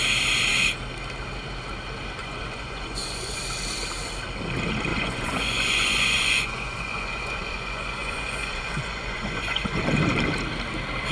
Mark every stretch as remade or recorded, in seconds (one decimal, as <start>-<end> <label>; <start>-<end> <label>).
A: 0.0-2.2 recorded; 2.2-3.4 remade; 3.4-4.9 recorded; 4.9-9.8 remade; 9.8-11.1 recorded